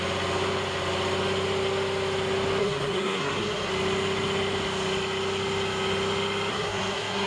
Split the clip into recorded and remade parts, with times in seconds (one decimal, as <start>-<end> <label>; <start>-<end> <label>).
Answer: 0.0-2.6 recorded; 2.6-3.7 remade; 3.7-6.5 recorded; 6.5-7.3 remade